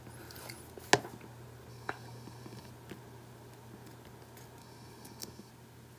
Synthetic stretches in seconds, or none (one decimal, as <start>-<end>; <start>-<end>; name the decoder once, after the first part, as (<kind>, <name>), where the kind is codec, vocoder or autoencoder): 1.7-2.7 (codec, DAC); 4.6-5.5